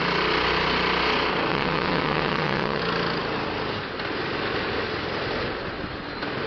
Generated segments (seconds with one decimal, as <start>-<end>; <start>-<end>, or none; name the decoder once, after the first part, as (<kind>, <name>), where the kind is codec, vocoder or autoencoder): 1.5-2.8 (vocoder, WaveNeXt)